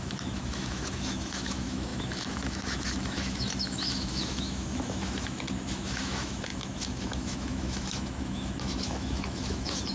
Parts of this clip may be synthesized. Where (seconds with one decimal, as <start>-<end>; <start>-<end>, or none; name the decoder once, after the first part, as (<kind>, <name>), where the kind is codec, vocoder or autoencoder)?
0.0-9.9 (autoencoder, DAC-VAE)